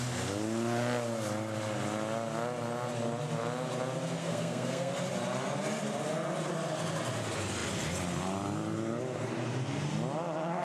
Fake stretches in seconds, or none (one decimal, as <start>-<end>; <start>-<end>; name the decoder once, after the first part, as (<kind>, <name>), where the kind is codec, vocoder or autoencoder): 4.2-4.9 (codec, SNAC)